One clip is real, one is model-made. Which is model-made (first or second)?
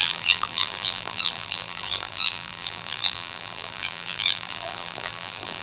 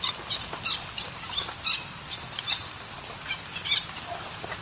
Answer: first